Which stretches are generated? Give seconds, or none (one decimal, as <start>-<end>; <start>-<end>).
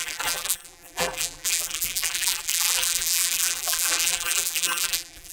0.0-5.3